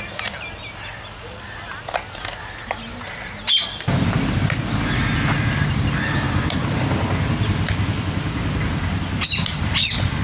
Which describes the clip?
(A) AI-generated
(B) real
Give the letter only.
B